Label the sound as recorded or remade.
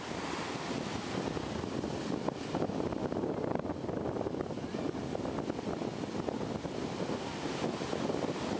recorded